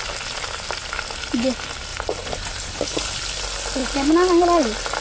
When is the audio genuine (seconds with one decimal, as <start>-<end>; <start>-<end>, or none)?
0.0-1.9; 2.8-5.0